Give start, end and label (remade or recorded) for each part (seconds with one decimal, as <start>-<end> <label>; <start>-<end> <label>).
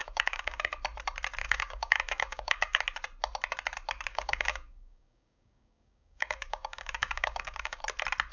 0.0-0.7 remade; 0.7-1.4 recorded; 1.4-2.8 remade; 2.8-4.1 recorded; 4.1-7.8 remade; 7.8-8.3 recorded